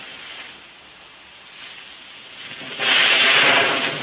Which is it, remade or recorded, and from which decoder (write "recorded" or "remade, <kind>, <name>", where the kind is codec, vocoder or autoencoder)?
recorded